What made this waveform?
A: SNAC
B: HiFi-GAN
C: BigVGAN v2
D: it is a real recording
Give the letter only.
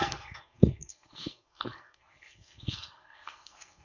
A